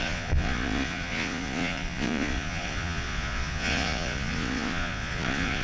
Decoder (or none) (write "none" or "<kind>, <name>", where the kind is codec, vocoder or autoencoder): vocoder, Vocos